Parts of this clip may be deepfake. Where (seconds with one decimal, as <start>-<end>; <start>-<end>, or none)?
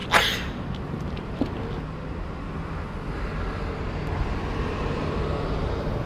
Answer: none